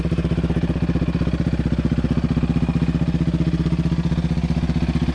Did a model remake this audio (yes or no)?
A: no